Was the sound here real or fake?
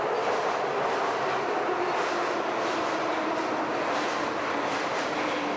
real